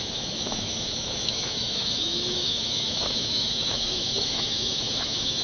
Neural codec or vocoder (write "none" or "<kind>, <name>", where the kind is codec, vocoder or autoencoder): autoencoder, DAC-VAE